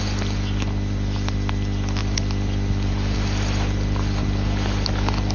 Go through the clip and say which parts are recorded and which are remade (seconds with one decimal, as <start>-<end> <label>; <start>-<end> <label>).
0.0-5.3 recorded